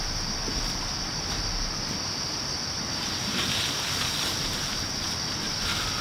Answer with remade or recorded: recorded